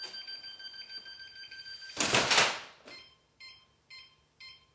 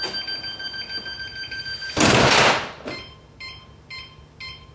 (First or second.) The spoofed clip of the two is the first